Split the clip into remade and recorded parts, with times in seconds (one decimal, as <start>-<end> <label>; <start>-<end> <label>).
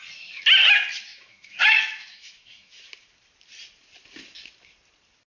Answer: 0.0-1.1 recorded; 1.1-2.8 remade; 2.8-5.3 recorded